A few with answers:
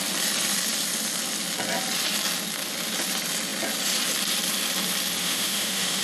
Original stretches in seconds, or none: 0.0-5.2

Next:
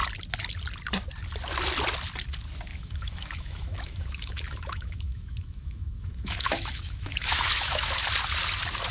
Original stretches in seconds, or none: 0.0-2.7; 7.9-8.9

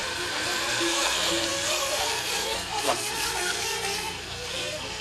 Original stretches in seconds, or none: none

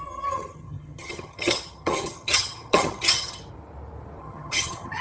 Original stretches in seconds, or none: 3.4-4.2

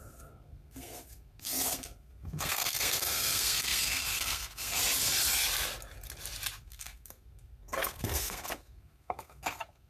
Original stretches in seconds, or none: 4.8-6.6